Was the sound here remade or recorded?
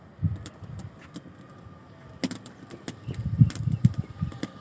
recorded